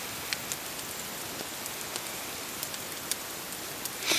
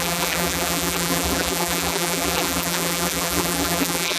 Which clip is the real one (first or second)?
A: first